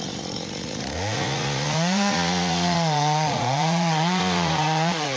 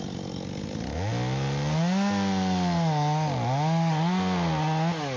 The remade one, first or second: first